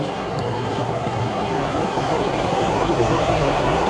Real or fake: fake